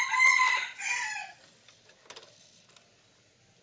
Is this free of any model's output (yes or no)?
yes